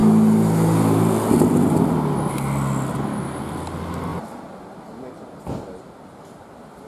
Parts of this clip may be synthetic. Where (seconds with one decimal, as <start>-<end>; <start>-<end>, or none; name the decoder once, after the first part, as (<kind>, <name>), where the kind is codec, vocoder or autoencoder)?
none